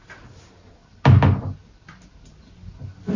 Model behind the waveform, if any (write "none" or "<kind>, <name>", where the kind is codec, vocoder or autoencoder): none